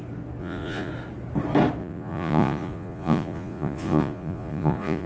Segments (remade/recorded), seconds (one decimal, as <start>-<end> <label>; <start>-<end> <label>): 0.0-0.4 recorded; 0.4-0.9 remade; 0.9-1.8 recorded; 1.8-5.1 remade